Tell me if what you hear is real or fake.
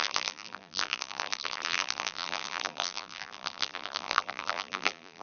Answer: fake